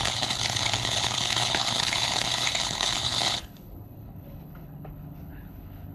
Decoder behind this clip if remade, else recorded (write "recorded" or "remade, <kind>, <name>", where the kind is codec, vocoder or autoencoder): remade, codec, HILCodec